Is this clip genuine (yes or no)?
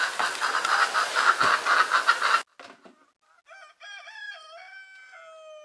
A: yes